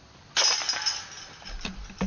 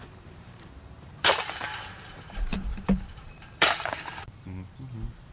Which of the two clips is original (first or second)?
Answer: first